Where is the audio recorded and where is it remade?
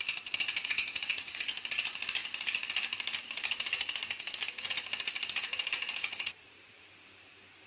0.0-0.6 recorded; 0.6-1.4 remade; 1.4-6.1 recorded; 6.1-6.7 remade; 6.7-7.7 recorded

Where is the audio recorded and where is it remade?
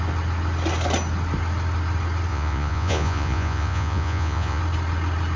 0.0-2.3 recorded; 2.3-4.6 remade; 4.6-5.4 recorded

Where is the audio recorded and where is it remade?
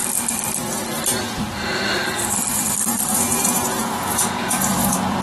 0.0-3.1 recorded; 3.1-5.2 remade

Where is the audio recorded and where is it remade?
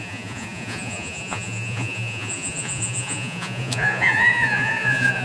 0.0-5.2 remade